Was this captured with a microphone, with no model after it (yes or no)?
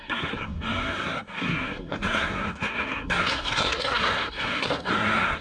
no